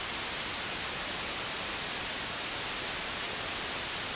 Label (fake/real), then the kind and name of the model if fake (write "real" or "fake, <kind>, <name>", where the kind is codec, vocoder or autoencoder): real